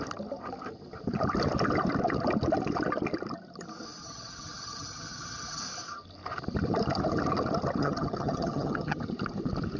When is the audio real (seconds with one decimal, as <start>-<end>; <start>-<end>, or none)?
0.0-4.0; 5.6-7.8; 9.0-9.8

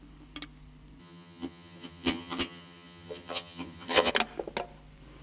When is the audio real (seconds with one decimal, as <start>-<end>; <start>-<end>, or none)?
0.0-1.0; 4.1-5.2

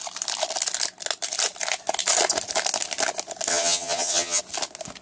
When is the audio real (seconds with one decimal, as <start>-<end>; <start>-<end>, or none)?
0.0-3.5; 4.4-5.0

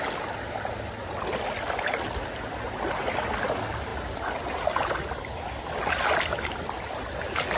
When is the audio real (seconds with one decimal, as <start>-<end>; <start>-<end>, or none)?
0.0-7.6

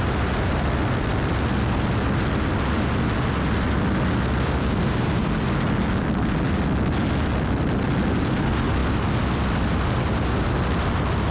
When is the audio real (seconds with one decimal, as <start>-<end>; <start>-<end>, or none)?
0.0-11.3

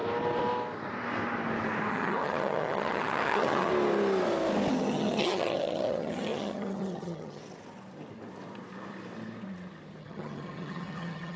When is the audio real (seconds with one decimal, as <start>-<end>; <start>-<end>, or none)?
0.0-1.9; 3.7-4.7; 7.4-10.0

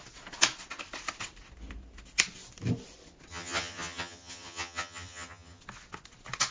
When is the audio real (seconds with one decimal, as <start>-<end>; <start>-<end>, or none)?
0.0-3.3; 5.6-6.5